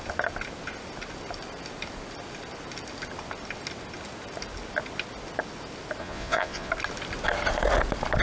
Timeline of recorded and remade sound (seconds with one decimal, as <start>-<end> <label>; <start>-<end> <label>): 0.0-6.0 recorded; 6.0-6.7 remade; 6.7-8.2 recorded